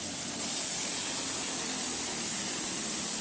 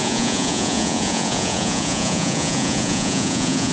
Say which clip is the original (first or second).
first